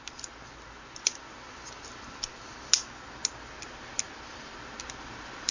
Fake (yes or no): no